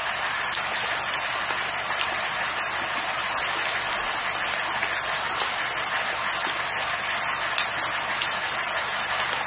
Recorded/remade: recorded